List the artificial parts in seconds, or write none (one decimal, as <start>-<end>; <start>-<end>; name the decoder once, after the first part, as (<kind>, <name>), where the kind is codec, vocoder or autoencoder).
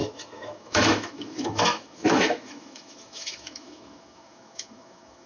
0.0-5.3 (autoencoder, DAC-VAE)